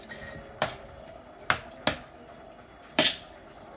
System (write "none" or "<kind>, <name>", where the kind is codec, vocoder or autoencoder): none